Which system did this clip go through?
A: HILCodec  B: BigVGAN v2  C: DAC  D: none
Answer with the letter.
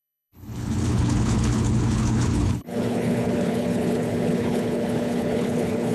A